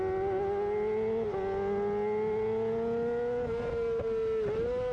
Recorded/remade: recorded